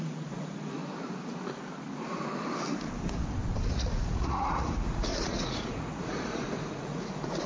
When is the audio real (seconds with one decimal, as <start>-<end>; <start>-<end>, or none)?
0.8-3.7